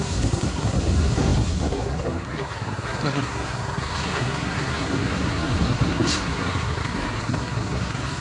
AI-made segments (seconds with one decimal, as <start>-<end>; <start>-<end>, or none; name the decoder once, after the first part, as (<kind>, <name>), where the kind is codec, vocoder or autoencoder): 0.0-8.2 (codec, SNAC)